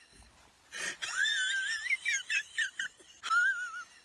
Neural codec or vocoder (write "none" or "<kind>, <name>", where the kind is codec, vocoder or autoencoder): none